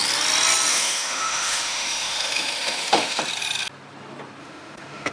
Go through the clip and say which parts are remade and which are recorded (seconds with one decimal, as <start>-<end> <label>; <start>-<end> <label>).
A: 0.0-0.7 recorded; 0.7-3.2 remade; 3.2-4.4 recorded; 4.4-5.1 remade